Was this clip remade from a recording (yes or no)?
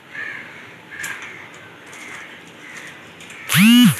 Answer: no